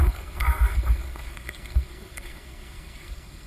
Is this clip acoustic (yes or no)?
no